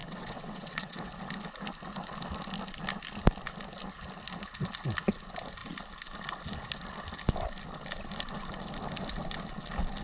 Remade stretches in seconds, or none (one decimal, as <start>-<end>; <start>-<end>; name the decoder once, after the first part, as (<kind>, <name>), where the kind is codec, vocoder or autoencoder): 0.0-1.1 (vocoder, WaveNeXt)